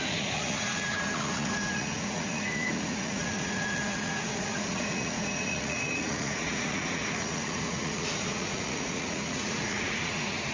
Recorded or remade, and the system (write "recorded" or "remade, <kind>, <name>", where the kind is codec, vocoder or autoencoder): remade, vocoder, Vocos